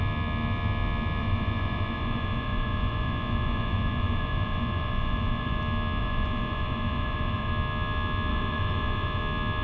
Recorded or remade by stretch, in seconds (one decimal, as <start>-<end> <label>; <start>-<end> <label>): 0.0-1.2 recorded; 1.2-5.6 remade; 5.6-6.0 recorded; 6.0-7.5 remade; 7.5-8.3 recorded; 8.3-9.2 remade; 9.2-9.6 recorded